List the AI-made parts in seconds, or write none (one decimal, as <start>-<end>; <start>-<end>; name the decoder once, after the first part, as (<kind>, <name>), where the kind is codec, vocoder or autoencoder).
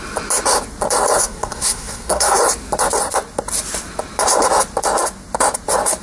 1.2-2.4 (codec, SNAC)